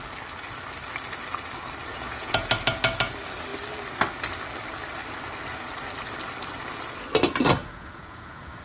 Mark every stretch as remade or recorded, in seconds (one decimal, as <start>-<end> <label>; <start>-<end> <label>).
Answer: 0.0-1.9 recorded; 1.9-2.5 remade; 2.5-7.6 recorded; 7.6-8.6 remade